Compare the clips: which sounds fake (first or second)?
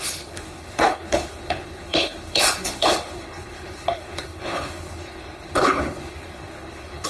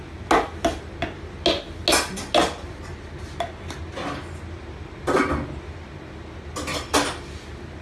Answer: first